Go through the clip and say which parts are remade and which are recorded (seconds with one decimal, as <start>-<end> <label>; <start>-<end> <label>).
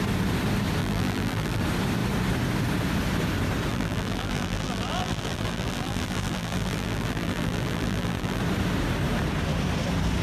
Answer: 0.0-0.8 recorded; 0.8-1.6 remade; 1.6-3.7 recorded; 3.7-8.4 remade; 8.4-10.2 recorded